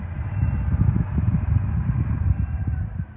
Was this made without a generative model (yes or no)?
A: no